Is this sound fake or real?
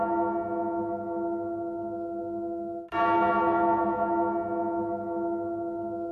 real